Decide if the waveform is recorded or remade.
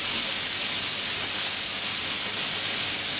recorded